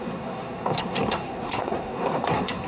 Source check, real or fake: fake